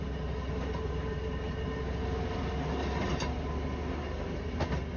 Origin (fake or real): real